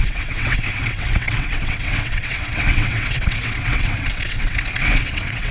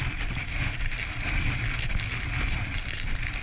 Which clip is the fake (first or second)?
first